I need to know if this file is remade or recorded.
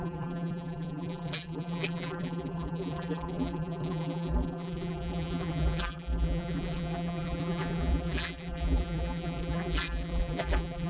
remade